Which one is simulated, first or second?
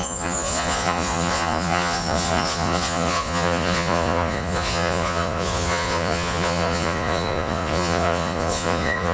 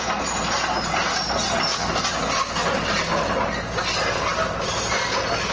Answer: first